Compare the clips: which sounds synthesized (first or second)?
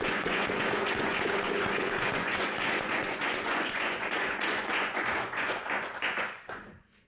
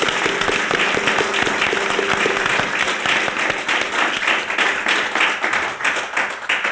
first